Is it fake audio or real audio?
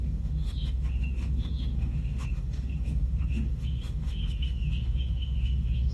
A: fake